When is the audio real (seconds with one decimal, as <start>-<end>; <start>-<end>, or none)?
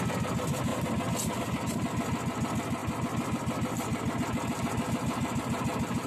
0.0-6.1